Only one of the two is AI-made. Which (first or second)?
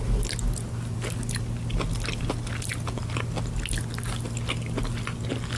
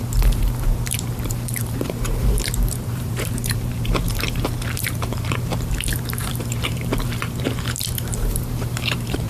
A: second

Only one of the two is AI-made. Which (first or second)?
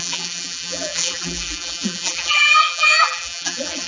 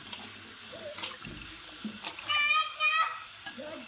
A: first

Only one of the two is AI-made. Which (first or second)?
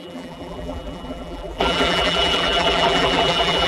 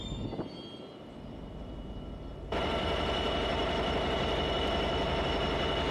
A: first